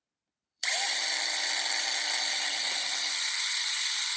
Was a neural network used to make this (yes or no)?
yes